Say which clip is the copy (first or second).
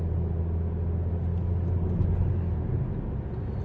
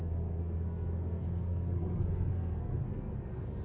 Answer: second